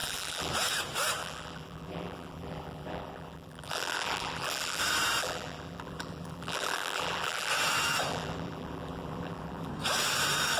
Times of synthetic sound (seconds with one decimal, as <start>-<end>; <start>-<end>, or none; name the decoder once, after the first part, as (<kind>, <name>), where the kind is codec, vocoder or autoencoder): 0.0-0.5 (vocoder, BigVGAN v2); 1.2-4.8; 5.2-7.5; 8.1-9.7